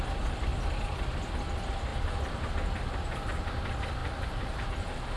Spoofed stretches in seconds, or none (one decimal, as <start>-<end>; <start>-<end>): none